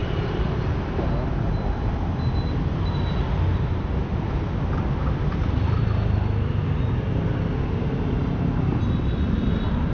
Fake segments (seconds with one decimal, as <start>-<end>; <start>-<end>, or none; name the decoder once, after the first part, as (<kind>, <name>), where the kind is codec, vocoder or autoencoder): none